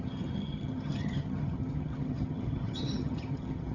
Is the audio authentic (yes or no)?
no